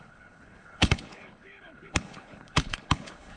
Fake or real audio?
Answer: fake